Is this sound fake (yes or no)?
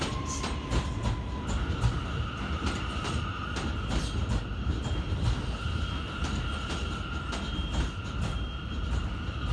no